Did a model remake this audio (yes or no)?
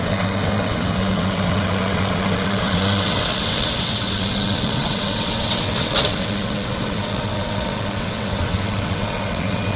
yes